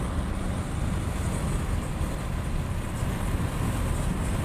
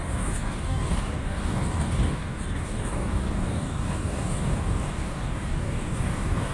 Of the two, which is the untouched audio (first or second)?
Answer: first